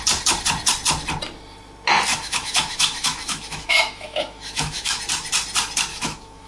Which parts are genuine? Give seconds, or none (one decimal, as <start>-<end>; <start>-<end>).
0.0-2.1; 5.0-5.9

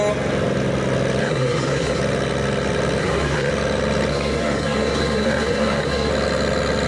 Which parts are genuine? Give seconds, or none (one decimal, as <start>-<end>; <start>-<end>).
0.0-1.2; 2.0-3.0; 3.5-4.1; 6.1-6.9

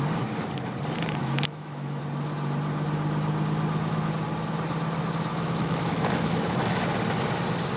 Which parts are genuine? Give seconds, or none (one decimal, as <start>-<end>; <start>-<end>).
0.0-1.2; 2.0-5.3; 6.8-7.8